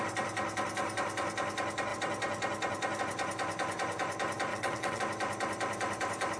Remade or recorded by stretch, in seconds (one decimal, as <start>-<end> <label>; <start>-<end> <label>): 0.0-4.5 recorded; 4.5-5.0 remade; 5.0-6.4 recorded